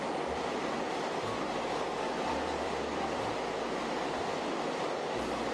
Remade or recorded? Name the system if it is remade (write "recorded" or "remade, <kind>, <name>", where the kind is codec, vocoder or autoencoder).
remade, vocoder, BigVGAN v2